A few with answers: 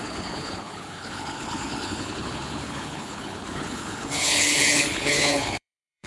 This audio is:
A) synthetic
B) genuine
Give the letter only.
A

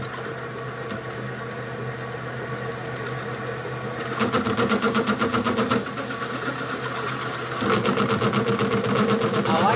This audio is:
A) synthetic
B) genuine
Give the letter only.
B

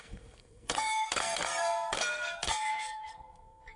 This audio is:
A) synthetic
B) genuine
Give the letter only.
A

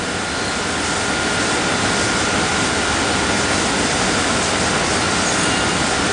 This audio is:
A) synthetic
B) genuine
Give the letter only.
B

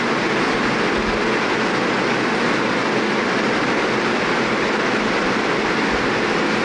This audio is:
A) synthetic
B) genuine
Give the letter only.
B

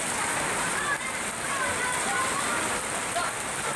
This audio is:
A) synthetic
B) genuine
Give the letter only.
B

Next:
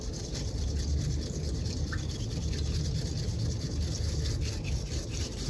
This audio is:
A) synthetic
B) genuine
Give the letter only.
B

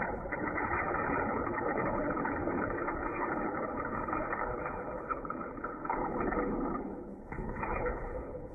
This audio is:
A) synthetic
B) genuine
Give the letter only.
A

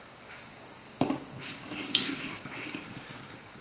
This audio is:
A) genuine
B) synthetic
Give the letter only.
B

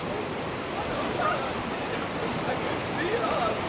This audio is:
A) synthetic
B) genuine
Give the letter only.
B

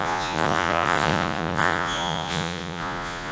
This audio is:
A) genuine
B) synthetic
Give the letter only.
B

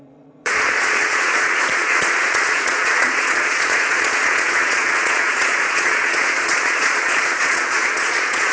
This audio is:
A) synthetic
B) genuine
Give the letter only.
A